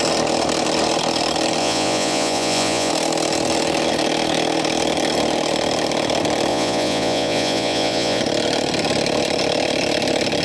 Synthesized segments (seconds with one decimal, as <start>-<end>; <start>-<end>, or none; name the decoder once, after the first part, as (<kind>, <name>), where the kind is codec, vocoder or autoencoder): 1.6-2.9 (vocoder, Vocos); 6.5-8.2